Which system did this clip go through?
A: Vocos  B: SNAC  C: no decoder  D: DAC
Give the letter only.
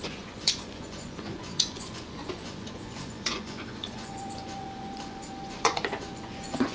A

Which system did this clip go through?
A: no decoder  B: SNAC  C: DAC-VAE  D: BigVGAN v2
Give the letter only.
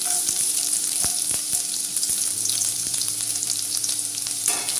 D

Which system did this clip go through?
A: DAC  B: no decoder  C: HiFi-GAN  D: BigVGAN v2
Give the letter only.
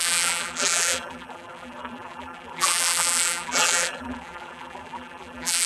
D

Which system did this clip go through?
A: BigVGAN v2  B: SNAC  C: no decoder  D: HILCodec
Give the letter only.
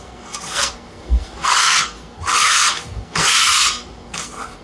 B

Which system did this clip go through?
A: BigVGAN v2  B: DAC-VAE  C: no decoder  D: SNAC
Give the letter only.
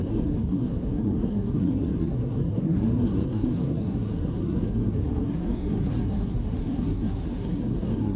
D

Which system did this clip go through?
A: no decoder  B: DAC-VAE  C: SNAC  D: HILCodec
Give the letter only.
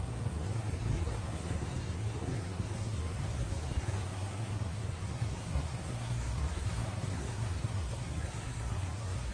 C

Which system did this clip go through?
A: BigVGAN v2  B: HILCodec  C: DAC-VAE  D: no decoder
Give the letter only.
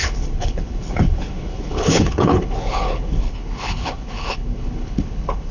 B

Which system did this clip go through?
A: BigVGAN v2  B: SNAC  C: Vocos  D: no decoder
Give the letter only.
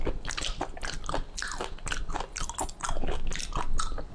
D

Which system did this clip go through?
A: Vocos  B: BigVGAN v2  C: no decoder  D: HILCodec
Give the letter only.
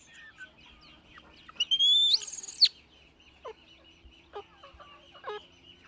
C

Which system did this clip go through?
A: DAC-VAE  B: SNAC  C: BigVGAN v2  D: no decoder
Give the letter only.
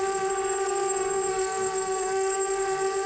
B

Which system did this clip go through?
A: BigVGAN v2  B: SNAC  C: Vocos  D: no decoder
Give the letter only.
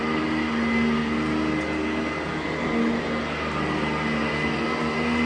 D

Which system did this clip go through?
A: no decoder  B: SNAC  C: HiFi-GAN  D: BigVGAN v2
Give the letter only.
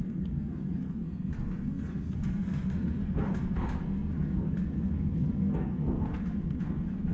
B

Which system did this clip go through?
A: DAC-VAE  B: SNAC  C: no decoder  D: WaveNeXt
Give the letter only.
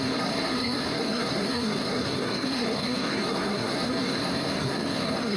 B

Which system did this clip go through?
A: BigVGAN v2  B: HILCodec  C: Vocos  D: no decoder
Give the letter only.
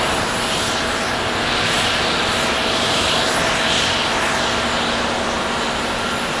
D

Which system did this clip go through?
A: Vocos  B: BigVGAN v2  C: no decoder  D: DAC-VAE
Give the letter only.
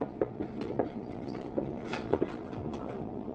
A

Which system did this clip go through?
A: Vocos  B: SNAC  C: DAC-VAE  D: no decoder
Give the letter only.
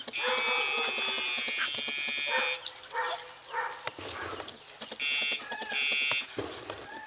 D